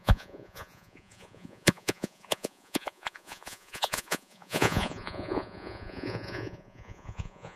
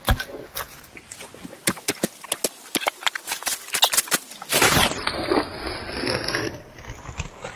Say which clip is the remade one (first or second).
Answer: first